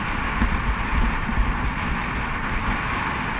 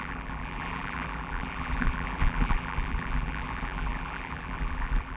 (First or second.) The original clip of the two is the first